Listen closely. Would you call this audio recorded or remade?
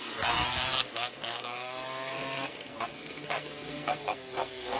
remade